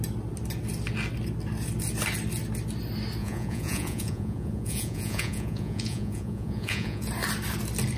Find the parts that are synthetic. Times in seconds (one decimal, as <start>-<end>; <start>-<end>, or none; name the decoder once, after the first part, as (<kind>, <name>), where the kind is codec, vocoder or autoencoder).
3.2-7.1 (vocoder, Vocos)